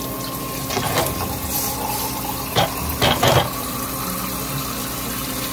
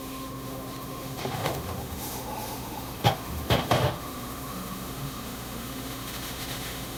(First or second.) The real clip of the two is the first